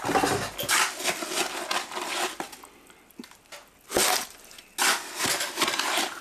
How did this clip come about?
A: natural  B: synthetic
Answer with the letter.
A